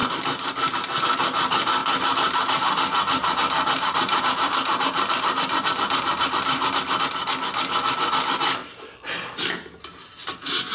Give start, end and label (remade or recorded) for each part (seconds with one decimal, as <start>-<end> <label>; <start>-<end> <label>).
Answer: 0.0-1.8 recorded; 1.8-7.0 remade; 7.0-10.7 recorded